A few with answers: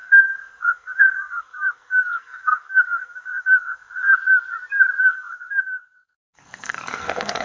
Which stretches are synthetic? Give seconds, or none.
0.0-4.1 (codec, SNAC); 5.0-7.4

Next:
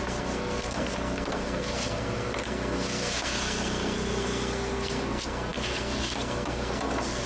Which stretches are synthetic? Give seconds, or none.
0.0-7.3 (codec, SNAC)

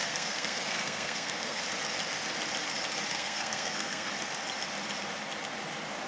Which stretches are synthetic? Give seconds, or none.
0.0-1.6 (codec, SNAC); 3.1-4.1

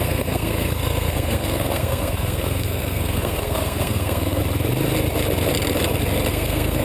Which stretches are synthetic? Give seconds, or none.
0.0-4.4 (codec, SNAC); 6.3-6.8

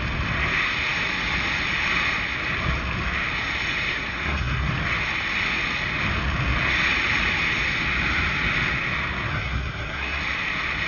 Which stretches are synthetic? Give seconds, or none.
3.9-4.7 (codec, SNAC); 9.3-10.2

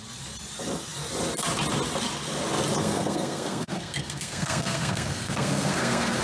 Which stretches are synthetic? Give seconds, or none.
2.8-6.2 (codec, SNAC)